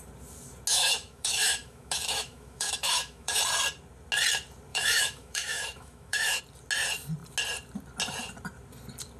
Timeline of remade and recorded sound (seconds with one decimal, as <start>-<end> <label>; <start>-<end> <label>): 0.0-0.7 recorded; 0.7-3.4 remade; 3.4-4.7 recorded; 4.7-6.4 remade; 6.4-9.2 recorded